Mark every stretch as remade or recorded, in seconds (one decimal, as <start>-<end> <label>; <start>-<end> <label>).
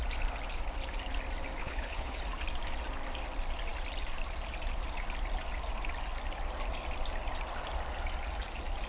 0.0-1.6 recorded; 1.6-2.2 remade; 2.2-8.9 recorded